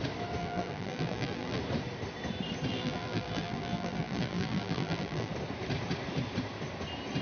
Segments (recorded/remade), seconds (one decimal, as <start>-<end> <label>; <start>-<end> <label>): 0.0-0.4 recorded; 0.4-1.6 remade; 1.6-2.7 recorded; 2.7-5.3 remade; 5.3-7.2 recorded